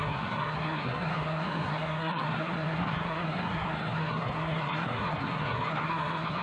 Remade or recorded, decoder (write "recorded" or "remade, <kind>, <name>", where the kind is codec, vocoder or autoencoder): remade, codec, SNAC